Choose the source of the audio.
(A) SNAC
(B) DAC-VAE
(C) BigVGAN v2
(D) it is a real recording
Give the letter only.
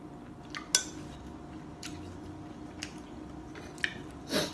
D